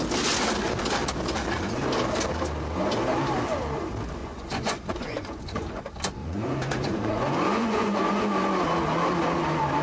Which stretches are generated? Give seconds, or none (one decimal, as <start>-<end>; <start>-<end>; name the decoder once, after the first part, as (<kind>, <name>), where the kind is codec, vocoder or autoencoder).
4.2-5.8 (vocoder, Vocos); 6.2-8.2